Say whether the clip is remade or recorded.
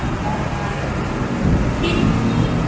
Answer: recorded